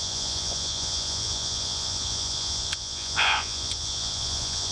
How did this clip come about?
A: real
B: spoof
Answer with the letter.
B